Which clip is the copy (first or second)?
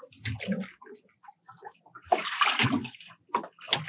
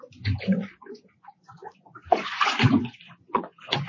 second